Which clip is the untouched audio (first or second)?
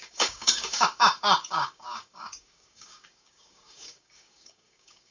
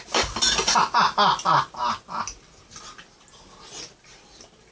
second